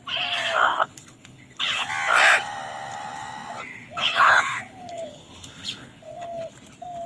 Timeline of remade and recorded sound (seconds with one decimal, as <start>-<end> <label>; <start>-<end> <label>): 0.0-0.7 recorded; 0.7-1.9 remade; 1.9-3.7 recorded; 3.7-6.5 remade; 6.5-7.1 recorded